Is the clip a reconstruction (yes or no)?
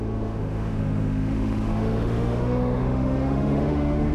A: yes